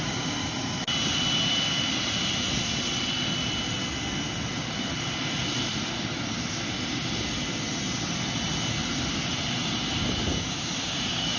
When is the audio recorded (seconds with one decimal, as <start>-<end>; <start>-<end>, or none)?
0.0-10.3